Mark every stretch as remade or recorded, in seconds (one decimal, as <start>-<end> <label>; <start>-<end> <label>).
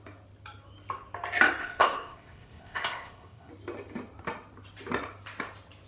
0.0-1.6 recorded; 1.6-3.5 remade; 3.5-5.9 recorded